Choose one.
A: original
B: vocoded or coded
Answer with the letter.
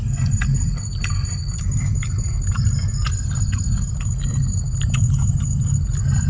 A